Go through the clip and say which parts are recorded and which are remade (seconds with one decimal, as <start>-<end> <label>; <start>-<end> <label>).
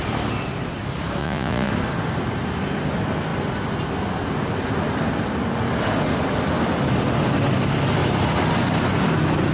0.0-1.2 recorded; 1.2-1.7 remade; 1.7-9.5 recorded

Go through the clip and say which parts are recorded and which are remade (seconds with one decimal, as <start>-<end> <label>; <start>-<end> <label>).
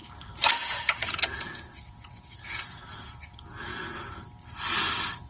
0.0-0.5 recorded; 0.5-3.7 remade; 3.7-5.3 recorded